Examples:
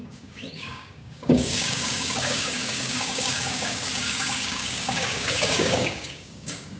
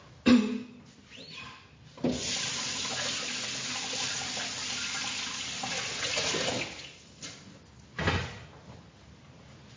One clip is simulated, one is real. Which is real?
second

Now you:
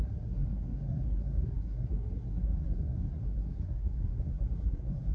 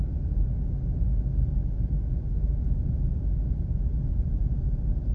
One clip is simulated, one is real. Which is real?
second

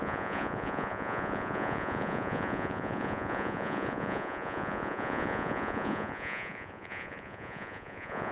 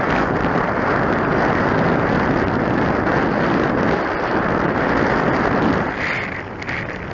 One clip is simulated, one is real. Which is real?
second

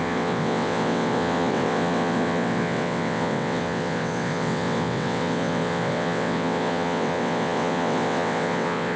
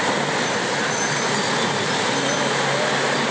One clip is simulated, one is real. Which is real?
second